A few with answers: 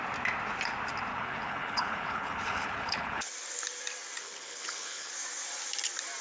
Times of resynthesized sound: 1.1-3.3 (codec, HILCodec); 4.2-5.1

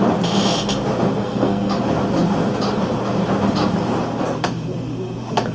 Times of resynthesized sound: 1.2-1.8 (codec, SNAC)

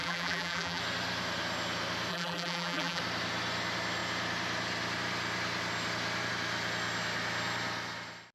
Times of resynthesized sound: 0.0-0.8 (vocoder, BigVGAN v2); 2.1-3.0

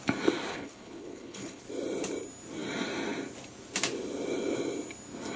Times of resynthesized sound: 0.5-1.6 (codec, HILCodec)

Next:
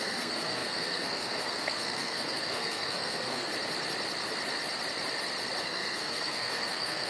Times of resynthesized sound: 0.0-3.5 (codec, SNAC); 5.6-7.1

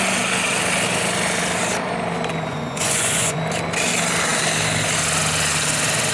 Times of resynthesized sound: 2.5-3.4 (vocoder, Vocos)

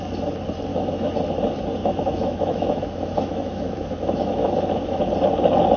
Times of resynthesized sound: 0.7-1.2 (autoencoder, DAC-VAE); 1.8-5.0